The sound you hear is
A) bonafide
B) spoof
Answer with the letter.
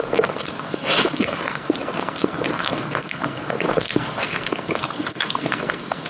B